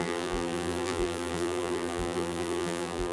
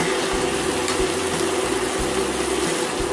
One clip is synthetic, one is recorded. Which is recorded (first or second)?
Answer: second